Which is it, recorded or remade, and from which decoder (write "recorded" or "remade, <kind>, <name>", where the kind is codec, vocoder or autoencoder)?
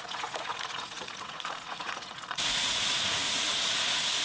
remade, vocoder, Vocos